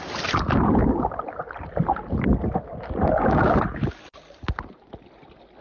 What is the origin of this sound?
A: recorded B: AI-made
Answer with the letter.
A